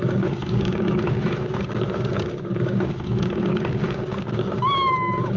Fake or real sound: fake